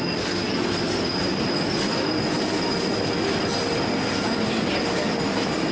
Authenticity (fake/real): real